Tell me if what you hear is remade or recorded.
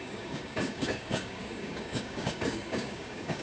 remade